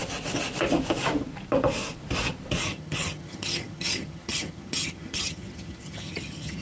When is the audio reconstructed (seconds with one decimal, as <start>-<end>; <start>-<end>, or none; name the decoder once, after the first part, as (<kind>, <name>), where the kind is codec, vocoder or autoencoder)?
2.6-6.6 (vocoder, HiFi-GAN)